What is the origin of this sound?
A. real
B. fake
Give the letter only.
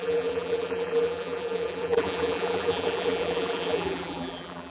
B